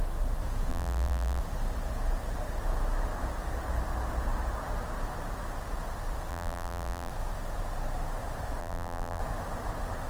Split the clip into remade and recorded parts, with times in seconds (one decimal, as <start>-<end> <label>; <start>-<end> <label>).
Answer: 0.0-0.7 recorded; 0.7-1.4 remade; 1.4-6.3 recorded; 6.3-7.1 remade; 7.1-8.6 recorded; 8.6-9.2 remade; 9.2-10.1 recorded